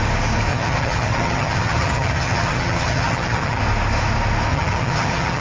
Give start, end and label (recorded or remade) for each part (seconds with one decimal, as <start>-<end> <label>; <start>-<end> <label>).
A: 0.0-0.5 recorded; 0.5-3.6 remade; 3.6-4.5 recorded; 4.5-5.4 remade